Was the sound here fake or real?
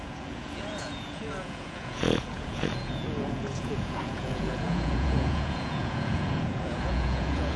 fake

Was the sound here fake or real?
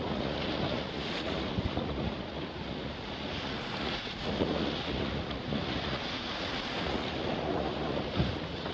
fake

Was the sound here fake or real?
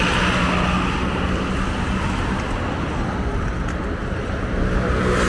real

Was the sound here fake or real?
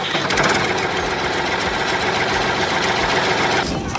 real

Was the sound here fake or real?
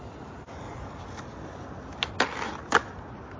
real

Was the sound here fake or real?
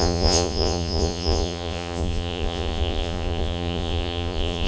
fake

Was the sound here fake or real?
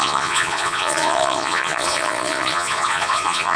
fake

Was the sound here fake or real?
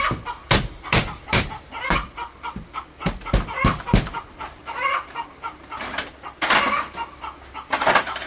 real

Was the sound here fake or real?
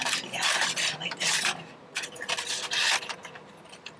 real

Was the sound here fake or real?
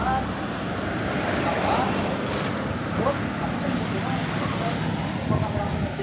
real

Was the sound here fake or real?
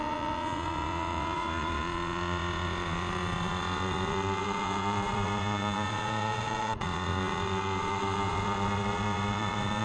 fake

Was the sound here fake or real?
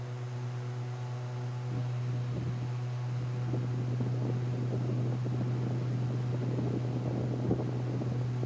real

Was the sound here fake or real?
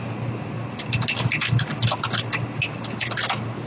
real